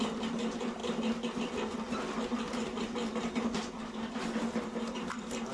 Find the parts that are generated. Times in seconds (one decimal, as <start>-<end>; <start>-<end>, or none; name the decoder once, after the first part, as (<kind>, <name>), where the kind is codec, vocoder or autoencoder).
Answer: none